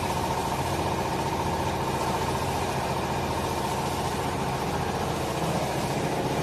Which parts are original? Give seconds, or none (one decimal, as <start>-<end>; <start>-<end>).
0.0-6.4